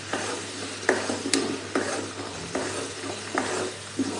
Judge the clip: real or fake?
fake